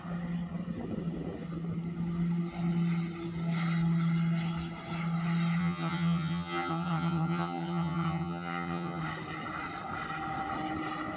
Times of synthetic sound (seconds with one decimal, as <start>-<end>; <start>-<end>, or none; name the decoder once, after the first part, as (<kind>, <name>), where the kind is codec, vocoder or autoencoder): 5.6-9.0 (vocoder, HiFi-GAN)